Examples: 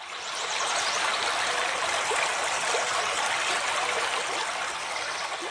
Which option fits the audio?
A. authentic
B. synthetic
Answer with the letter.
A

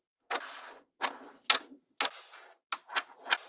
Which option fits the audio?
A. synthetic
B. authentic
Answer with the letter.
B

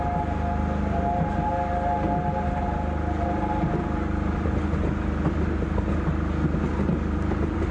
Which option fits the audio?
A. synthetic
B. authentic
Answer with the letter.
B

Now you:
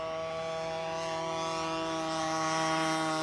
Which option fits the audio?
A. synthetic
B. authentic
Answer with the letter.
B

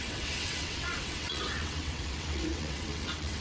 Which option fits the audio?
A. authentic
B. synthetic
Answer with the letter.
B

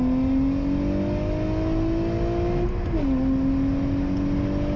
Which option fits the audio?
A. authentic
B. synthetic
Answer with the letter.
A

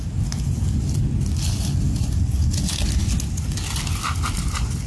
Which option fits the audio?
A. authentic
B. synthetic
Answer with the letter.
A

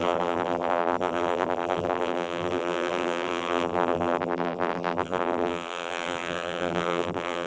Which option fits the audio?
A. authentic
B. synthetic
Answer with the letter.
B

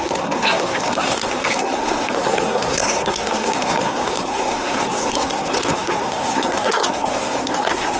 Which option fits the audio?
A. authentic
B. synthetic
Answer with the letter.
B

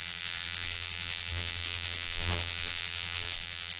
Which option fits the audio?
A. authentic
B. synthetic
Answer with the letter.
B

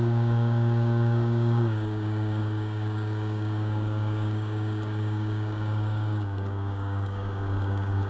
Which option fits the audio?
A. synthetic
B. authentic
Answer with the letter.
A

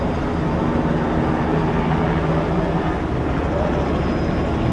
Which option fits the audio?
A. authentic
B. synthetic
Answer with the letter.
A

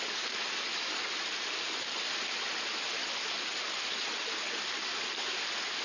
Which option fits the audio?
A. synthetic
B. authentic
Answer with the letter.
B